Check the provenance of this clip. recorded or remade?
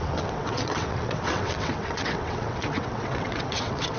remade